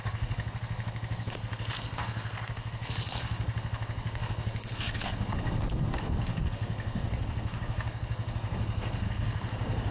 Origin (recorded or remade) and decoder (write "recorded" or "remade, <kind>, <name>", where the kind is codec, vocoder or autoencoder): remade, codec, SNAC